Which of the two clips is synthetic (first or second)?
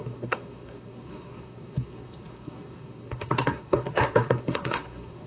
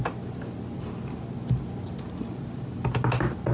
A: first